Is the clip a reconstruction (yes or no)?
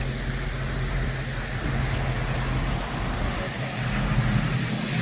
no